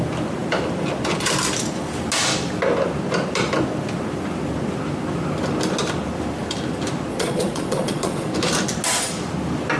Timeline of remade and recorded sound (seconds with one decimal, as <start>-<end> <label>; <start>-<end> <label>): 0.0-7.1 recorded; 7.1-8.3 remade; 8.3-9.8 recorded